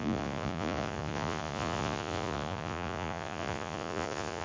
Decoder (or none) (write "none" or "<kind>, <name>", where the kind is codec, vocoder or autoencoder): vocoder, Vocos